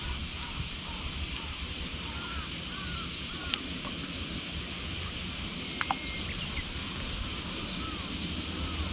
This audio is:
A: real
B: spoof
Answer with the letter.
A